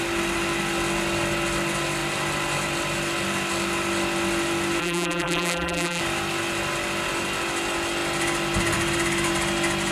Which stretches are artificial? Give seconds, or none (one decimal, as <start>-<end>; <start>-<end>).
4.8-6.0